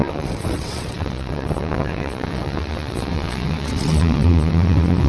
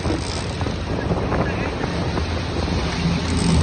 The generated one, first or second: first